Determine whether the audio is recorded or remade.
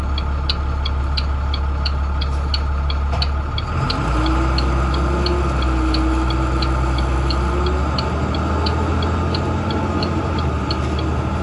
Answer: recorded